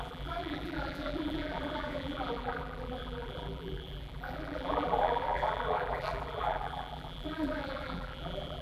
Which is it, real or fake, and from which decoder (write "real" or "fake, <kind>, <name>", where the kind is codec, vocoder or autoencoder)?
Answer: fake, vocoder, BigVGAN v2